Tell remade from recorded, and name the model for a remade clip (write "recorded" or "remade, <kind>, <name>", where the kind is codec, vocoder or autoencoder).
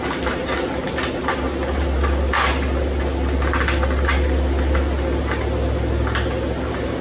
recorded